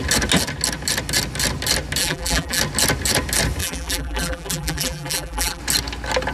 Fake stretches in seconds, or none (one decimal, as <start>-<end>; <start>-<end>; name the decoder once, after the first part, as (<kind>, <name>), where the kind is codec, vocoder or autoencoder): 2.0-2.6 (vocoder, BigVGAN v2); 3.6-5.6